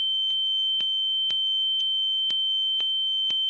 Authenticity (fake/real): fake